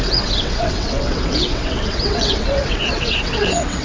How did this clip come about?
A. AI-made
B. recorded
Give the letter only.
A